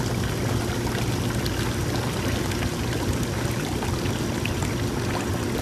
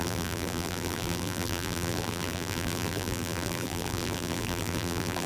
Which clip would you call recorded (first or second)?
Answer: first